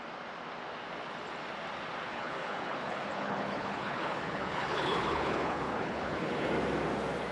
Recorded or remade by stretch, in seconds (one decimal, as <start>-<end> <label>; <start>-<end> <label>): 0.0-2.1 recorded; 2.1-6.5 remade; 6.5-7.3 recorded